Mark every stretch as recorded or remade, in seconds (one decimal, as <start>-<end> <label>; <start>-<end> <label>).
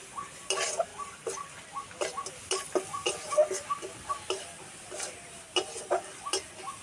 0.0-6.8 recorded